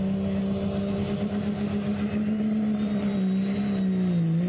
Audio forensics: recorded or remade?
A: recorded